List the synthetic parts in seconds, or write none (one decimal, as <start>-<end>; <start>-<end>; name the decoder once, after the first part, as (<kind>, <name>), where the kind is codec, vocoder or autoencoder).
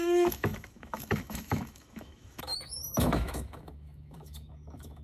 0.0-5.0 (autoencoder, DAC-VAE)